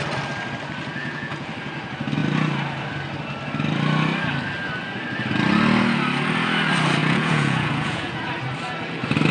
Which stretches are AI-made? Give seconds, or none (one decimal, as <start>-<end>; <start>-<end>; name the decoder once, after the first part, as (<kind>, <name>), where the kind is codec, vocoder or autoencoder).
1.0-1.5 (vocoder, Vocos); 7.0-8.2